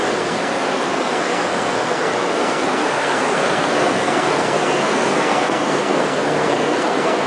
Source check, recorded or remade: remade